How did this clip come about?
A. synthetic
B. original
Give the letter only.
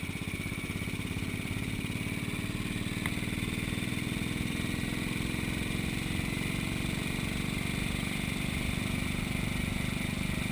B